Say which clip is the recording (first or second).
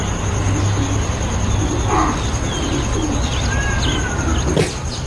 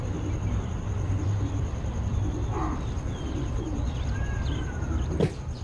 first